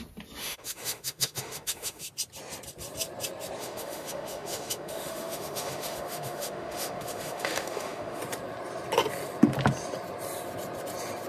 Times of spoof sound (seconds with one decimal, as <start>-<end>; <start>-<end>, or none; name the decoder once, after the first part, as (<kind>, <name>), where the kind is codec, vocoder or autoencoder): 0.4-2.1 (autoencoder, DAC-VAE); 3.6-8.2